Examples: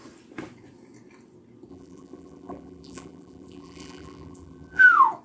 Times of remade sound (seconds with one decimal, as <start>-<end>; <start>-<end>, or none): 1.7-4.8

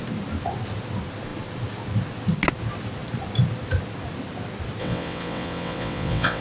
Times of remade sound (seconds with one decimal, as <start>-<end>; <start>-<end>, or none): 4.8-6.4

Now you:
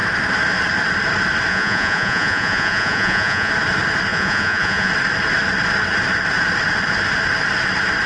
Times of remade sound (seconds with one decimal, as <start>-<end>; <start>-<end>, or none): 1.5-3.5; 4.1-4.9